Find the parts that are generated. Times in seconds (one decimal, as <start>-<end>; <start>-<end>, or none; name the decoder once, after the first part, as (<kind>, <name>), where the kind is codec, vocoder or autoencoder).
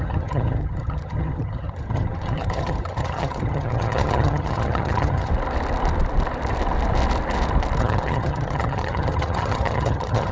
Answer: 0.0-5.3 (vocoder, HiFi-GAN); 7.8-10.3